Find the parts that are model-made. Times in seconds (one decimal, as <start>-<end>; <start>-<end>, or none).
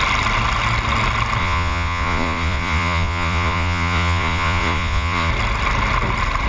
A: 1.4-5.3